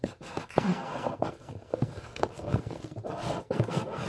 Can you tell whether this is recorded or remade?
remade